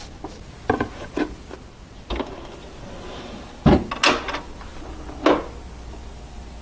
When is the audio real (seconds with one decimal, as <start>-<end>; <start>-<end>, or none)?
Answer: 0.0-6.6